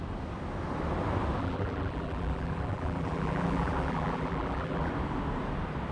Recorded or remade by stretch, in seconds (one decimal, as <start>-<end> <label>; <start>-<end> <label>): 0.0-1.4 recorded; 1.4-4.9 remade; 4.9-5.9 recorded